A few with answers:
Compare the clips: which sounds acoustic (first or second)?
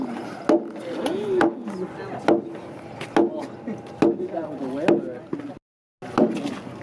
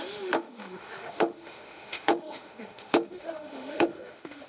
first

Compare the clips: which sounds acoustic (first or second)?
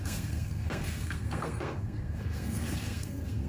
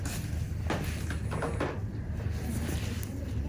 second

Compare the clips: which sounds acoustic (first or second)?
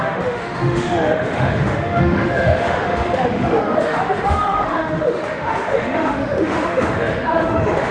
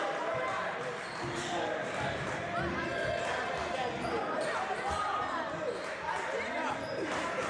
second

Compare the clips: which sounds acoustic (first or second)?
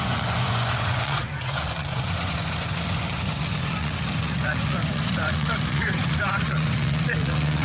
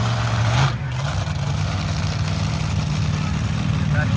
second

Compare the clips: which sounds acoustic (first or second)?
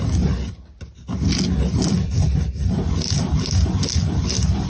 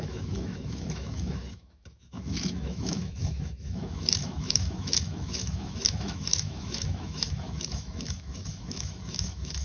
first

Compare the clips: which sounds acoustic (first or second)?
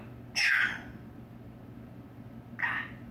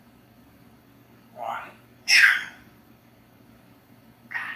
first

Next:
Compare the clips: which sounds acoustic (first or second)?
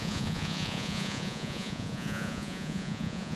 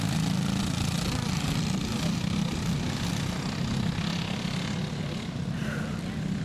second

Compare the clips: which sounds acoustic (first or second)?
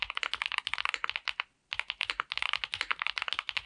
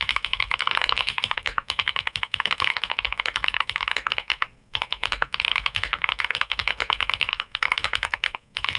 first